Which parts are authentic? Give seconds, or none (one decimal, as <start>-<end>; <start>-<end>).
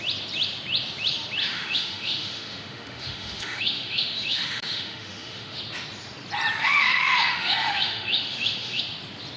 0.0-1.4; 5.6-6.6; 8.8-9.4